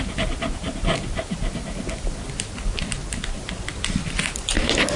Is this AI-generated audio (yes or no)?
no